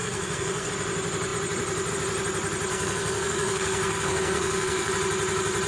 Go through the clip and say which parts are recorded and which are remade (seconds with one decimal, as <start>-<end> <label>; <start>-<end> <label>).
0.0-0.7 remade; 0.7-2.7 recorded; 2.7-4.9 remade; 4.9-5.7 recorded